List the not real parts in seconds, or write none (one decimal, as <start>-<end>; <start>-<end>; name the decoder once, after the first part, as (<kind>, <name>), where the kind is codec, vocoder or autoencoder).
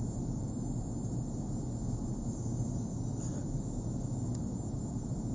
none